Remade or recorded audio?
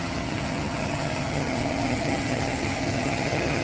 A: remade